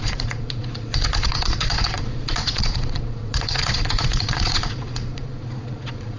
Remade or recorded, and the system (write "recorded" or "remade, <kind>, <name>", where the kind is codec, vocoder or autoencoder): remade, vocoder, Vocos